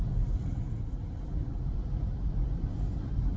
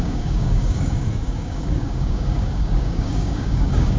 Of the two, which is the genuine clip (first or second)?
first